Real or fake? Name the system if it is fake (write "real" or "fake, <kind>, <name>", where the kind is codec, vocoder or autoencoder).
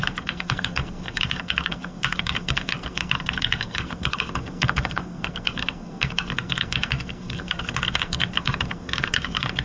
fake, codec, SNAC